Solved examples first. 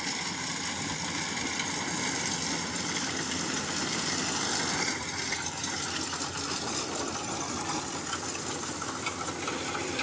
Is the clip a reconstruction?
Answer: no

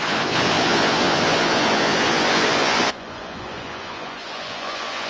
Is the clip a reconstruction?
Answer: yes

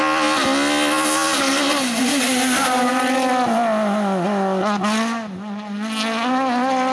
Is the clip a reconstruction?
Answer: no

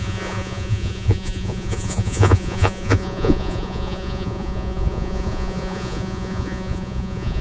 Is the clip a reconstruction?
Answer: yes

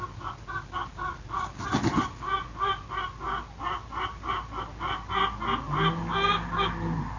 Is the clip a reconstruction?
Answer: no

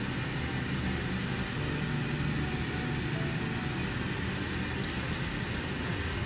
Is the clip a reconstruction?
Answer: no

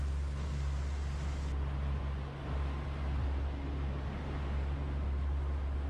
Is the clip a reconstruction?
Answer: no